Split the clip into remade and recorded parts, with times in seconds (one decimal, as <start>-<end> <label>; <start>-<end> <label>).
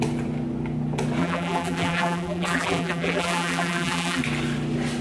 0.0-1.2 recorded; 1.2-4.2 remade; 4.2-5.0 recorded